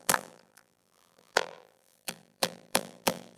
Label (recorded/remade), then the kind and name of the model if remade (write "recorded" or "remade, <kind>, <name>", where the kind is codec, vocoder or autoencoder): remade, vocoder, BigVGAN v2